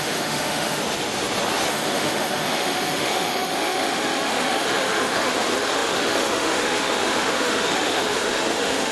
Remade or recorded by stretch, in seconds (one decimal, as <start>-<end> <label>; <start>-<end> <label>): 0.0-0.8 remade; 0.8-1.7 recorded; 1.7-8.9 remade